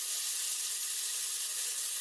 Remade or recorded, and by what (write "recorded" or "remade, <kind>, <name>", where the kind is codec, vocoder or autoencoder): recorded